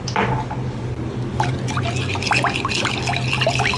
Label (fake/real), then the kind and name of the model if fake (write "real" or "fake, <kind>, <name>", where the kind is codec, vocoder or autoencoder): real